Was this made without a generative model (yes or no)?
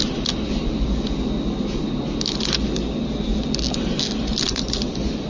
yes